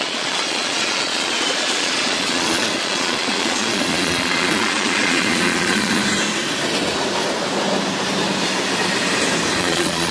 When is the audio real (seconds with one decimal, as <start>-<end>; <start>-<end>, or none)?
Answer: 6.0-9.6